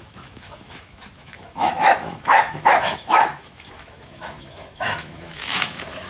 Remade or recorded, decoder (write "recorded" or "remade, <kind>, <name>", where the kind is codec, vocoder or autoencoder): remade, autoencoder, DAC-VAE